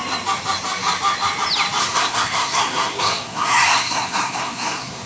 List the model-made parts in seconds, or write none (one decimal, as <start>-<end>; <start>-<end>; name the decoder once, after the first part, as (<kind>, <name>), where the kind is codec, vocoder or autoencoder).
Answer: 1.8-5.1 (codec, SNAC)